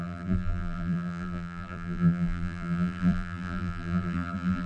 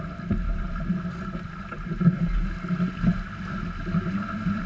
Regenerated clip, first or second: first